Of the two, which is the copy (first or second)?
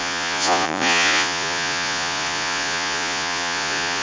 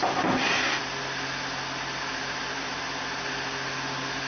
first